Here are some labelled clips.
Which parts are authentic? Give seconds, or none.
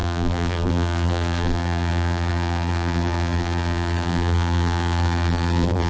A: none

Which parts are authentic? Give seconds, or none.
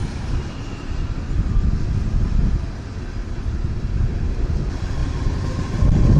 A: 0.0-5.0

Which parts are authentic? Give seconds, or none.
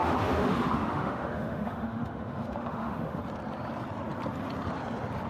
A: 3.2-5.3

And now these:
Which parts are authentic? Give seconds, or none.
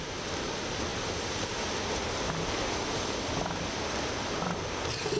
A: 0.0-5.2